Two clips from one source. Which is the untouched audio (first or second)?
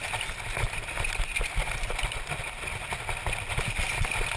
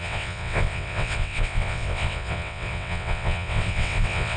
first